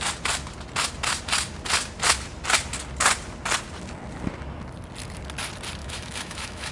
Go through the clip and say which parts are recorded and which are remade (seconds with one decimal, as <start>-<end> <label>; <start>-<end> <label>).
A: 0.0-5.8 recorded; 5.8-6.7 remade